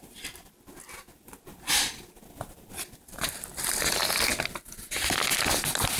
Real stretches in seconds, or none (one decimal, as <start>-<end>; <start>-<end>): 0.0-6.0